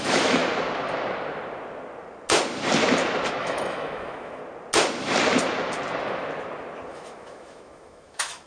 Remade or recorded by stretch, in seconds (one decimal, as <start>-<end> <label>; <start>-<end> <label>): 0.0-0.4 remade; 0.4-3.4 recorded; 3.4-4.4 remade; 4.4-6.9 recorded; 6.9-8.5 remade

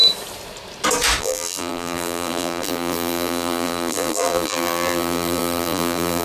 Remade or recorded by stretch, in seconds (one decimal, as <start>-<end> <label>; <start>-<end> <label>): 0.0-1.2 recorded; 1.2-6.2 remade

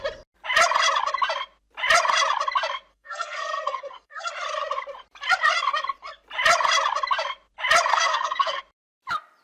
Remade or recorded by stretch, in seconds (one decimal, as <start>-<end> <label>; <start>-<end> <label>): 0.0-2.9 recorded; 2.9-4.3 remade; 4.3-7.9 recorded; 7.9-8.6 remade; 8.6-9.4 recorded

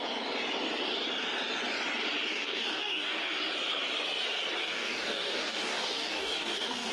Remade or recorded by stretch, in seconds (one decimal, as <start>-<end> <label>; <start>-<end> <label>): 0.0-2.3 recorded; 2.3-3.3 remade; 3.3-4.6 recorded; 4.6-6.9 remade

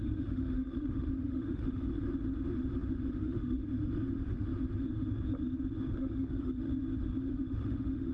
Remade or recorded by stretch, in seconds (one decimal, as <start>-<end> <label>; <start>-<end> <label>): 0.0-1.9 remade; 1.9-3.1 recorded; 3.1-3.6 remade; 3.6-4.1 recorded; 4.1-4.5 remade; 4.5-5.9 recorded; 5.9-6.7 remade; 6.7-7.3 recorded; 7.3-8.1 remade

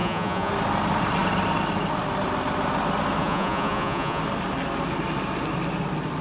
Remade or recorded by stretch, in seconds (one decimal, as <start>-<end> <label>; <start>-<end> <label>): 0.0-0.5 remade; 0.5-3.2 recorded; 3.2-4.2 remade; 4.2-6.2 recorded

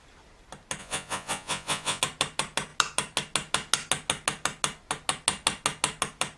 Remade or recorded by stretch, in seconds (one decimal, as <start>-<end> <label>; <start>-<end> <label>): 0.0-0.8 recorded; 0.8-2.0 remade; 2.0-6.4 recorded